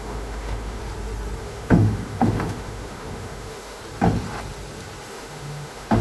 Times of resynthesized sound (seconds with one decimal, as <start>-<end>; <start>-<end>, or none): 0.0-0.8; 1.4-3.8; 5.1-6.0